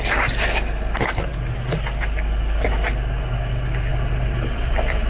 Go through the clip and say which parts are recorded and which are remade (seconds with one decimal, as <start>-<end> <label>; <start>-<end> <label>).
0.0-3.9 recorded; 3.9-5.1 remade